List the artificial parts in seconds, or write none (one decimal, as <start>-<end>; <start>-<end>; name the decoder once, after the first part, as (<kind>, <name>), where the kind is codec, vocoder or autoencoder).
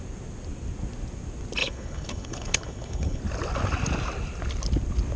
1.6-3.2 (codec, HILCodec)